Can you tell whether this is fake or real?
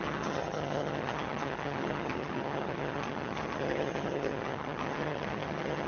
fake